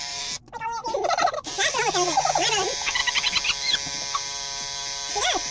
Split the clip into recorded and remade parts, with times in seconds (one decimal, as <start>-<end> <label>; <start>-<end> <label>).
0.0-3.0 remade; 3.0-5.1 recorded; 5.1-5.5 remade